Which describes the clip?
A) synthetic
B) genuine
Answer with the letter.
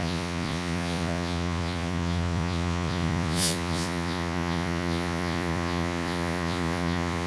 A